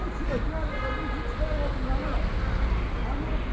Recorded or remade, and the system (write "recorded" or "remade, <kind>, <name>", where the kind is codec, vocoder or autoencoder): recorded